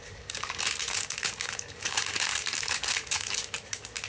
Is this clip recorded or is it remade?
remade